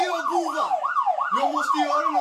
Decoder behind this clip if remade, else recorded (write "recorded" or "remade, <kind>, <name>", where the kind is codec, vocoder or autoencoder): recorded